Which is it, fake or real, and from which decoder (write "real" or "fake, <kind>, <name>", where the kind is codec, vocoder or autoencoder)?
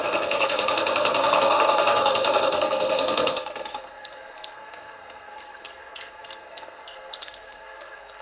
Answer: fake, codec, SNAC